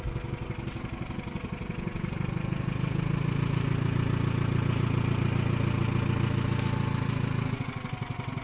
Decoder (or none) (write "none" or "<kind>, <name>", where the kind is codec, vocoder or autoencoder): none